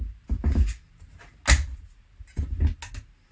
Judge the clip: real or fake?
real